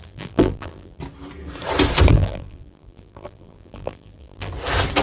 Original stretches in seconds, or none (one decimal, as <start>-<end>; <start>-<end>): 1.0-2.1; 4.5-5.0